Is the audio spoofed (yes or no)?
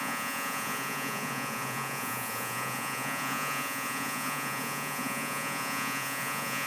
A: yes